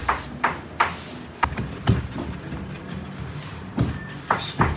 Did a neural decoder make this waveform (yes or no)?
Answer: no